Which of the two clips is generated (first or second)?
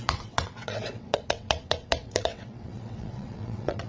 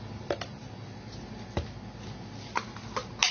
first